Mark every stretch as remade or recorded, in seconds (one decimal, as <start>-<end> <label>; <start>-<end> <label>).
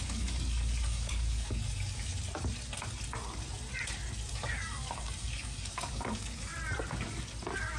0.0-2.1 remade; 2.1-4.3 recorded; 4.3-6.5 remade; 6.5-7.8 recorded